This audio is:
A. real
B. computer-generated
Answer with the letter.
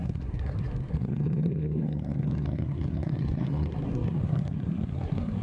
B